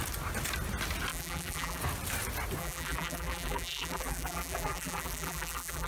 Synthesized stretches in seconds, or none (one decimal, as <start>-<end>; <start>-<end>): 1.1-1.8; 2.6-5.9